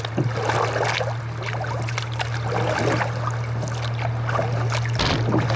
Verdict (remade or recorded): recorded